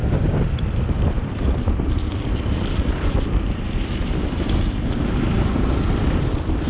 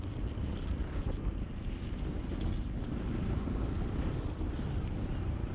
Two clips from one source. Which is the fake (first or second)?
first